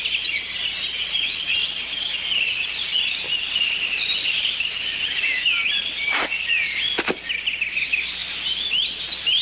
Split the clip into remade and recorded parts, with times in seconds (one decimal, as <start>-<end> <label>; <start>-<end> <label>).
0.0-9.4 recorded